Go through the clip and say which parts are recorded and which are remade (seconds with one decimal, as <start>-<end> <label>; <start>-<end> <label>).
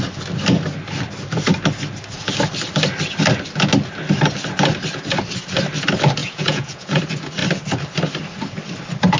0.0-6.2 recorded; 6.2-7.0 remade; 7.0-9.2 recorded